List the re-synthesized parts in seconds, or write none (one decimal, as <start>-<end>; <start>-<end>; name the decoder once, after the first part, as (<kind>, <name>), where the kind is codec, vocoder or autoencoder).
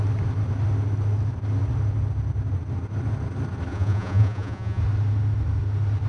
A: 3.7-4.8 (vocoder, Vocos)